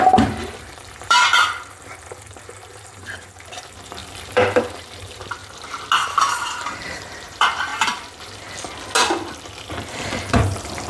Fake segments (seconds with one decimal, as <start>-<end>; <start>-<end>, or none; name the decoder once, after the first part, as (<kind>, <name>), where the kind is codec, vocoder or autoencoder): 0.0-5.4 (vocoder, BigVGAN v2); 6.2-7.7; 9.9-10.9